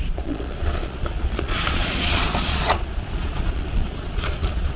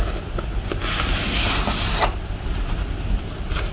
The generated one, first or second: first